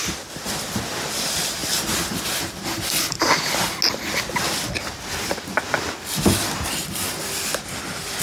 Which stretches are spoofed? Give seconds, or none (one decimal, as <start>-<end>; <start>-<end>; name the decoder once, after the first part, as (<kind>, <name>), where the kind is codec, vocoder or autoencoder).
none